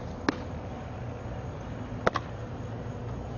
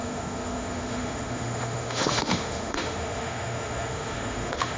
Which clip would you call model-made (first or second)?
second